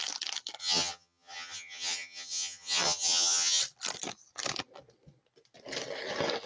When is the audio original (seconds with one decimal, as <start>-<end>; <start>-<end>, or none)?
0.0-0.6; 3.6-6.5